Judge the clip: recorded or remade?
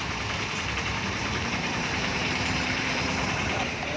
remade